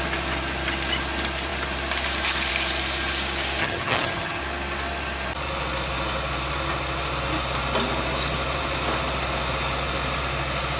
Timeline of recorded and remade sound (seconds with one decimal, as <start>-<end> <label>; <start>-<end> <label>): 0.0-3.6 recorded; 3.6-4.4 remade; 4.4-10.8 recorded